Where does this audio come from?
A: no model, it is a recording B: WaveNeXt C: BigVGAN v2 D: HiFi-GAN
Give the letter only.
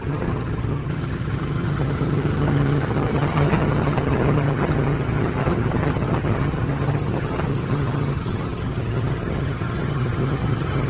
D